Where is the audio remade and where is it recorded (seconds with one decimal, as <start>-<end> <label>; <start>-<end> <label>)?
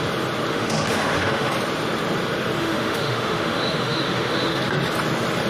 0.0-0.5 recorded; 0.5-1.5 remade; 1.5-2.6 recorded; 2.6-4.6 remade; 4.6-5.5 recorded